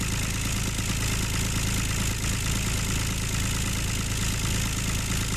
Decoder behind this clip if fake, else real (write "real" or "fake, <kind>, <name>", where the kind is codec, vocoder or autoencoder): real